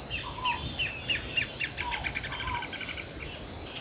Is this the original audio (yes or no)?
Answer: yes